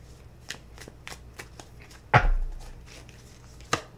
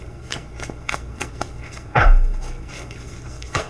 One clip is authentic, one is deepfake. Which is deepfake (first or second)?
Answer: second